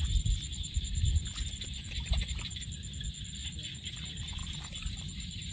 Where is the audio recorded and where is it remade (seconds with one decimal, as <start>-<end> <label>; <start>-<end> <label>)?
0.0-5.5 recorded

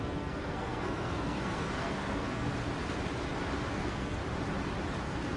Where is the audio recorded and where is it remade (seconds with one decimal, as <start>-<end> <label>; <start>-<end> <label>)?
0.0-2.5 remade; 2.5-3.7 recorded; 3.7-4.2 remade; 4.2-5.0 recorded; 5.0-5.4 remade

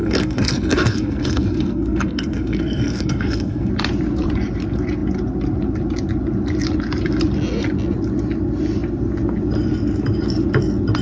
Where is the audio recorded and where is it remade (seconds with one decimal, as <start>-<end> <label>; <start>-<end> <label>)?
0.0-3.7 remade; 3.7-11.0 recorded

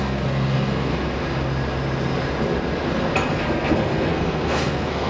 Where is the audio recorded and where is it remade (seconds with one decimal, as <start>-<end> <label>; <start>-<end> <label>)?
0.0-0.9 remade; 0.9-3.3 recorded; 3.3-5.1 remade

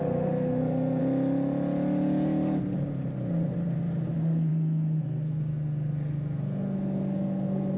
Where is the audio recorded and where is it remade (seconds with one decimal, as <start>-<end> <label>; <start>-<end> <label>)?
0.0-1.0 remade; 1.0-4.1 recorded; 4.1-7.8 remade

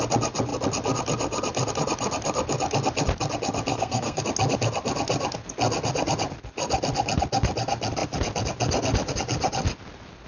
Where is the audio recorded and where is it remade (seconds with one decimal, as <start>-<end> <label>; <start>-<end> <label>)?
0.0-3.7 recorded; 3.7-4.2 remade; 4.2-10.3 recorded